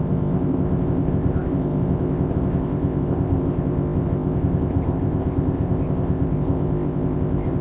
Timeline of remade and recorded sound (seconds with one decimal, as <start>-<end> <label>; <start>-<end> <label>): 0.0-7.6 remade